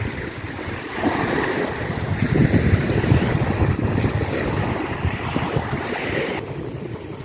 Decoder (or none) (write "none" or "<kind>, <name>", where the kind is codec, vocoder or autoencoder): none